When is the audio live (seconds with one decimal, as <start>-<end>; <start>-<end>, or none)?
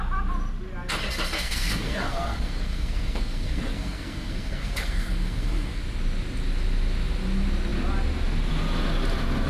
0.0-1.3; 5.8-9.5